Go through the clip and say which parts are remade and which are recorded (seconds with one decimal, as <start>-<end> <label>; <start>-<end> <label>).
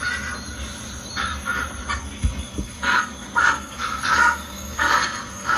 0.0-2.0 recorded; 2.0-5.6 remade